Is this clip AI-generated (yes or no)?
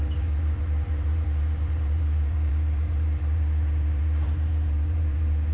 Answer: yes